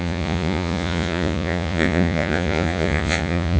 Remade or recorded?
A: remade